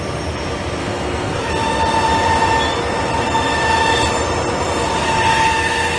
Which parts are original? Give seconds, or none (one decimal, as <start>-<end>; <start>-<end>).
0.0-0.8; 1.5-6.0